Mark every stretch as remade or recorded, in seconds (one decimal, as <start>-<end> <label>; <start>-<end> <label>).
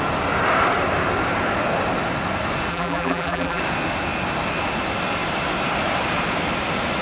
0.0-2.7 recorded; 2.7-3.6 remade; 3.6-7.0 recorded